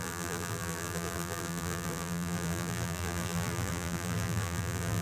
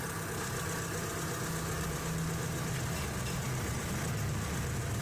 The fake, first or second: first